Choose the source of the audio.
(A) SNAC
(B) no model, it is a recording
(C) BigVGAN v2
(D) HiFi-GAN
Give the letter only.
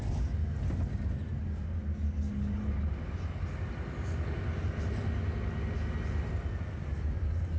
B